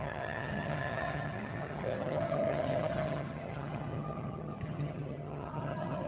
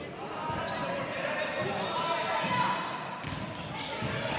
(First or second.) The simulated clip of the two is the first